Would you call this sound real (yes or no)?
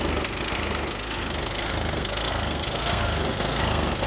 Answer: no